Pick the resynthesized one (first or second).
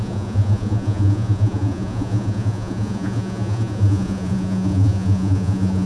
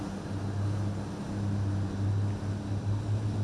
first